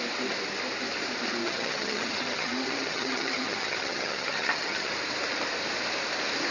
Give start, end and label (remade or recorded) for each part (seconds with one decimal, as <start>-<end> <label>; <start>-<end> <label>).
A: 0.0-1.4 recorded; 1.4-4.9 remade; 4.9-6.5 recorded